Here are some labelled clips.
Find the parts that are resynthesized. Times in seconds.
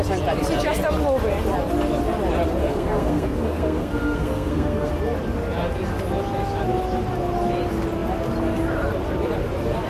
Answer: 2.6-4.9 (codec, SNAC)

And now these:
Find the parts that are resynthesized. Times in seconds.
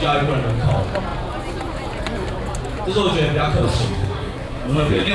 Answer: 3.8-5.1 (codec, SNAC)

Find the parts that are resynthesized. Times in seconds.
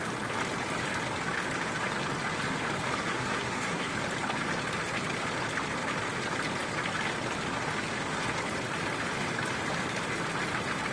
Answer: 3.1-3.9 (codec, SNAC)